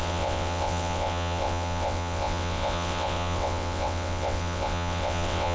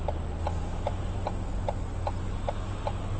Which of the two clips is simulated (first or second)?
first